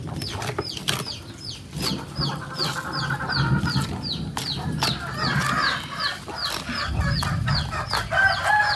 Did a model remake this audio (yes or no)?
no